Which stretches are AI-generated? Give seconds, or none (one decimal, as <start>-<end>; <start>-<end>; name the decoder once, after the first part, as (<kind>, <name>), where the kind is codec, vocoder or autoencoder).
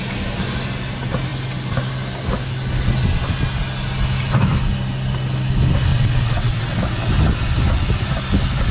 5.9-7.1 (vocoder, WaveNeXt)